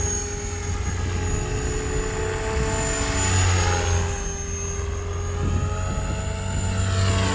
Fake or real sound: real